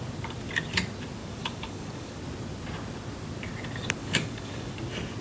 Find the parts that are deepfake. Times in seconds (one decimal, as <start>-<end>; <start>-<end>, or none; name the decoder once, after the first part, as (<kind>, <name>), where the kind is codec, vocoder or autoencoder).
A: 1.2-2.2 (codec, DAC); 4.0-4.7